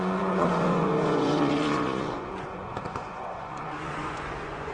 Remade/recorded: remade